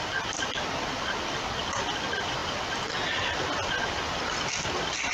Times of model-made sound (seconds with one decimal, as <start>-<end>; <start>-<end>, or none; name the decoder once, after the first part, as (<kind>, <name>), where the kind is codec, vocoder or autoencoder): none